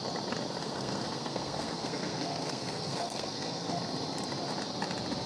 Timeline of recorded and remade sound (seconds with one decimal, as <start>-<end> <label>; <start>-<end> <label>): 0.0-0.6 recorded; 0.6-3.8 remade; 3.8-5.3 recorded